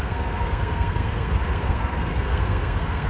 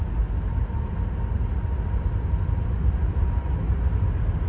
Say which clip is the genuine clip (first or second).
second